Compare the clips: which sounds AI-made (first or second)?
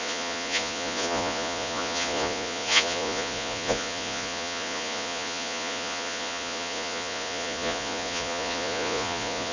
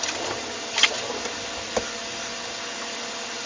first